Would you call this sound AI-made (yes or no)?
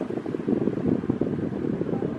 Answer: no